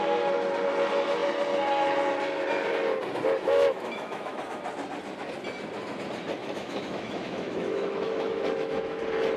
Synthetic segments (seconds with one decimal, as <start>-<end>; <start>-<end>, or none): 3.4-4.4; 6.4-9.0